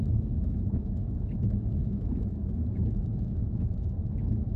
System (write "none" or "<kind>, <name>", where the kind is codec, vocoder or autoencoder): autoencoder, DAC-VAE